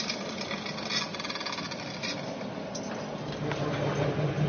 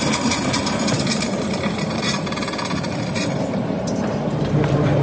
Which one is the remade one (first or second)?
second